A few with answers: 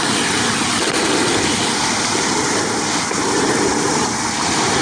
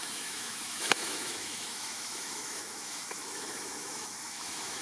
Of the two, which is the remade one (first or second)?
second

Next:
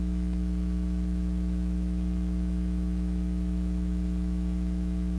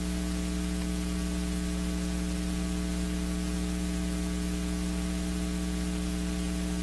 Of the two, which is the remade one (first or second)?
first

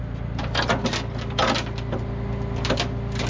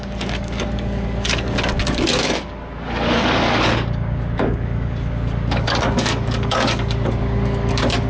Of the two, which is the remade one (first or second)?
second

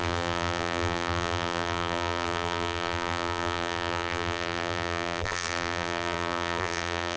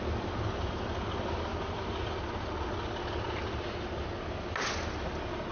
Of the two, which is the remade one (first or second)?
first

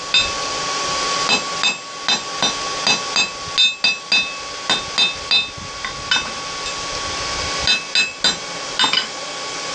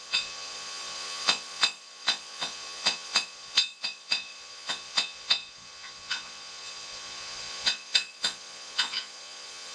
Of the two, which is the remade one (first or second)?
second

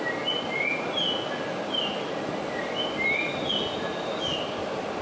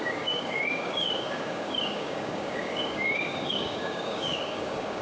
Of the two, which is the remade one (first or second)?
second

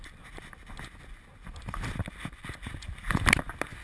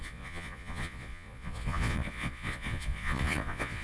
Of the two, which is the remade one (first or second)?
second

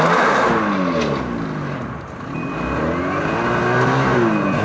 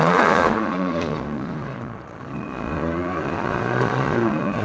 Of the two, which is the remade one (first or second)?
second